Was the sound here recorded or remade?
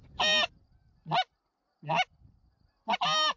recorded